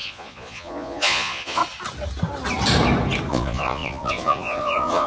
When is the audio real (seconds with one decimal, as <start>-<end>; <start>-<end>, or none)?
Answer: 1.6-3.3